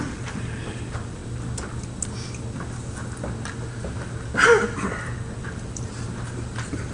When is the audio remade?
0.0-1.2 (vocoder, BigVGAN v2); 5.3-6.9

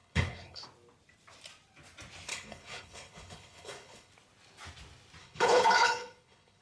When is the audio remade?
0.0-0.6 (codec, HILCodec); 2.3-4.1; 5.2-6.6

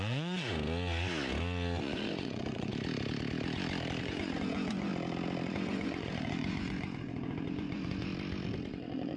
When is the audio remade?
0.0-0.5 (vocoder, Vocos); 1.8-2.7; 4.0-4.9; 5.5-8.1; 8.7-9.2

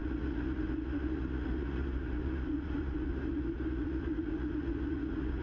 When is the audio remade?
0.0-5.4 (vocoder, Vocos)